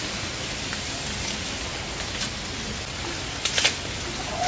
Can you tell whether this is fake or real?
real